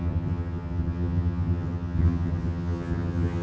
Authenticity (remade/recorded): remade